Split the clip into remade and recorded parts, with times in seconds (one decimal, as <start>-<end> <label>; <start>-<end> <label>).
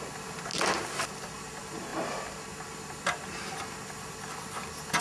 0.0-5.0 recorded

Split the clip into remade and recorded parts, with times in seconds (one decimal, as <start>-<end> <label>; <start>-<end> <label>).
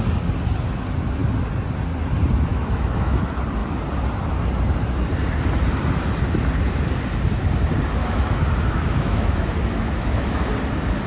0.0-2.5 recorded; 2.5-3.2 remade; 3.2-8.0 recorded; 8.0-10.5 remade; 10.5-11.1 recorded